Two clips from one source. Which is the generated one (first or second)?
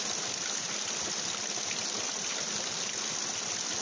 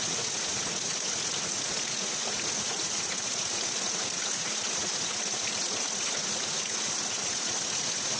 second